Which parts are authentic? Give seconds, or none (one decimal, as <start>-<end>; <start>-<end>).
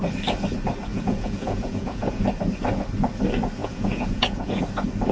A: 0.0-0.9; 2.2-3.6; 4.5-5.1